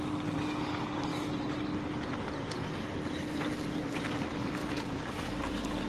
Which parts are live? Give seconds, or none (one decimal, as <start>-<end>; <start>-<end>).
0.0-4.6; 5.2-5.9